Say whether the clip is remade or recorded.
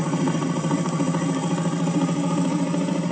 recorded